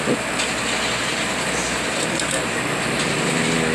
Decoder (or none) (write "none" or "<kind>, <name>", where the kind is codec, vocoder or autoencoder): none